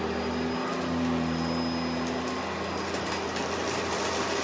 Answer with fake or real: real